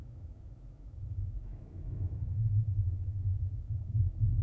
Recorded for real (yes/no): no